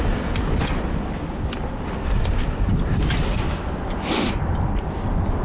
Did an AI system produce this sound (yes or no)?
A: no